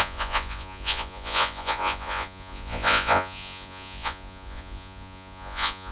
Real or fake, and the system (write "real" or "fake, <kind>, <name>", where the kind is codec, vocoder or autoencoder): fake, vocoder, Vocos